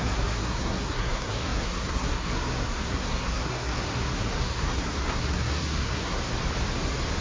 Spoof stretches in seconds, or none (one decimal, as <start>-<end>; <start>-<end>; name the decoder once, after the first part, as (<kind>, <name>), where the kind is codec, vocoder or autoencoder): 0.0-6.3 (codec, SNAC)